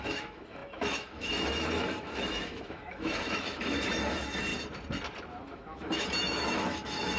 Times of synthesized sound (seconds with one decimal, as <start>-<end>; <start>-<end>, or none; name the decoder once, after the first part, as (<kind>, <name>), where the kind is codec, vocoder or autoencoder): 0.0-4.5 (autoencoder, DAC-VAE); 5.4-7.2